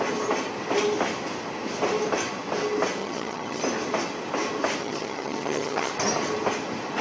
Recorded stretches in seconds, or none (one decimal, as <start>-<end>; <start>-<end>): 0.0-3.0; 3.6-4.8; 5.9-7.0